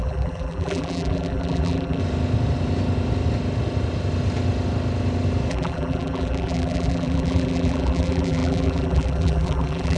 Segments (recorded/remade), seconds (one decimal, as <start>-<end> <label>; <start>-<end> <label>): 0.0-2.0 remade; 2.0-5.5 recorded; 5.5-10.0 remade